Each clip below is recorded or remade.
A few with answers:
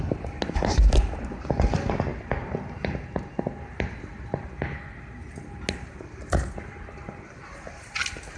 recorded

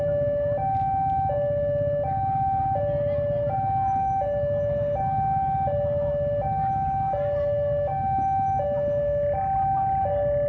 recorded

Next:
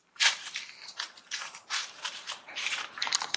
remade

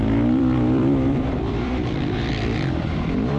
remade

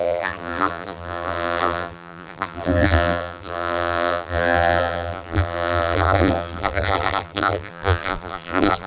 remade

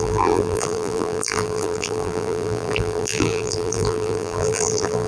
remade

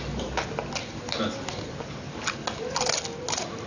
recorded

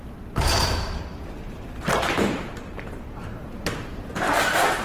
remade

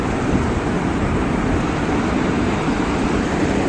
remade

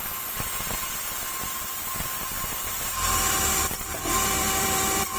remade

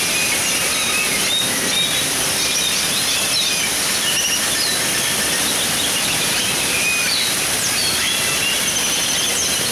recorded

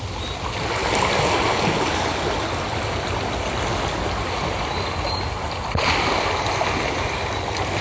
recorded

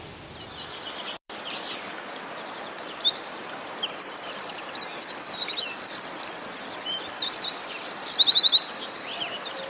remade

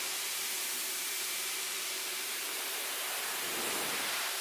remade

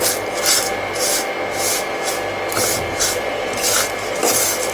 recorded